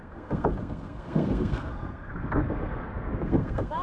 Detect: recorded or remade remade